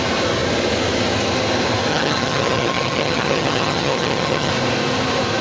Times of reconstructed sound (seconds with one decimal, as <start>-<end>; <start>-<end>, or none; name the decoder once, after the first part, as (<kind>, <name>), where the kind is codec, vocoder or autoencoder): 1.9-4.5 (vocoder, HiFi-GAN)